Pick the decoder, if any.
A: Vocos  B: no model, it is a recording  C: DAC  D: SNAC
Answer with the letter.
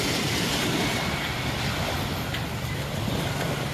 B